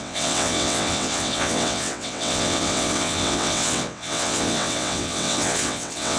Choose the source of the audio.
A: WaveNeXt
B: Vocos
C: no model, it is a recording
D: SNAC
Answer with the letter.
A